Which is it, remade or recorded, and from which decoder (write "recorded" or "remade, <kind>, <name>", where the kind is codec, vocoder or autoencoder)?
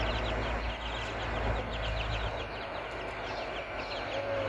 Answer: recorded